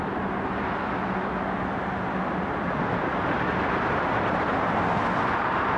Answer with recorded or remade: recorded